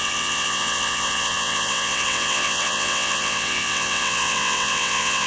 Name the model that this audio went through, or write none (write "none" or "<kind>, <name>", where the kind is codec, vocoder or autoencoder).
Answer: vocoder, WaveNeXt